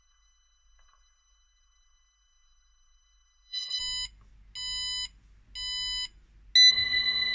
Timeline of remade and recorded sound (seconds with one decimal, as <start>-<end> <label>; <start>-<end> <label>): 0.0-3.8 remade; 3.8-6.7 recorded; 6.7-7.3 remade